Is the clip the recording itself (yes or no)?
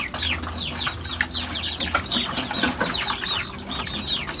yes